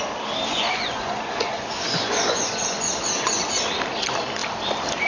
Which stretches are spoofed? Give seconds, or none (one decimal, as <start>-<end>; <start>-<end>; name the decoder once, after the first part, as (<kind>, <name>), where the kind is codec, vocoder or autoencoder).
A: 0.5-3.6 (vocoder, Vocos)